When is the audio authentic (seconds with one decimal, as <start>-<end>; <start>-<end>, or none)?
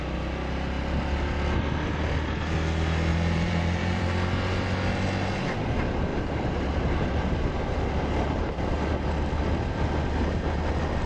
0.0-3.1; 4.0-6.1; 8.9-11.1